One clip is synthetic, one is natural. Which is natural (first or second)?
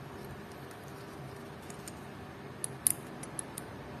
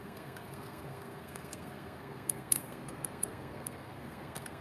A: first